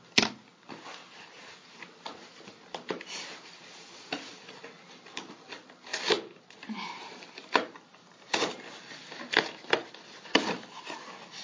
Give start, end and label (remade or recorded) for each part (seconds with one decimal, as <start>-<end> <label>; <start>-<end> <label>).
0.0-1.0 recorded; 1.0-4.6 remade; 4.6-5.9 recorded; 5.9-8.6 remade; 8.6-11.4 recorded